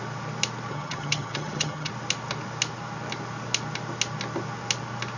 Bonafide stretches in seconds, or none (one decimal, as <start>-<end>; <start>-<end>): 0.0-0.7; 1.9-5.2